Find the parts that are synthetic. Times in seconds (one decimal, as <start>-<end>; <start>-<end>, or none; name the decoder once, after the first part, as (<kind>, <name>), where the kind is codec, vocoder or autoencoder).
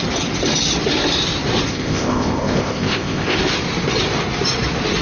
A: 1.7-3.4 (codec, ZipCodec)